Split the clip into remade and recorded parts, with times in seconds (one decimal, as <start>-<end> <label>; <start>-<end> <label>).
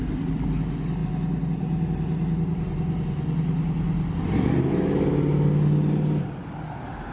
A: 0.0-7.1 recorded